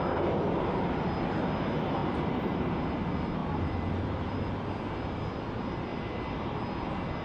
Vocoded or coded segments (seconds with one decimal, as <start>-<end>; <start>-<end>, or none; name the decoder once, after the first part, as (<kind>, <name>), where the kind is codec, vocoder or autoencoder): 2.0-2.7 (vocoder, BigVGAN v2); 3.4-4.4